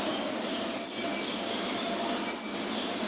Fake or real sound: real